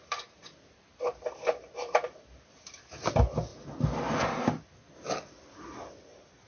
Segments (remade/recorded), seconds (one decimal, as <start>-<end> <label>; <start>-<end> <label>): 0.0-3.1 remade; 3.1-6.5 recorded